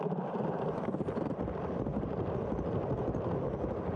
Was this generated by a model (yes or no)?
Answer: no